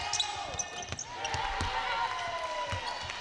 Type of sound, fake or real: real